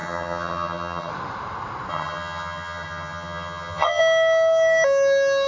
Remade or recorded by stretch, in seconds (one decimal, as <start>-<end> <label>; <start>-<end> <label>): 0.0-1.1 remade; 1.1-1.9 recorded; 1.9-4.0 remade; 4.0-5.5 recorded